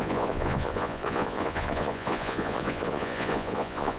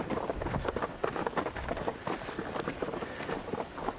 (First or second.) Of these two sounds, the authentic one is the second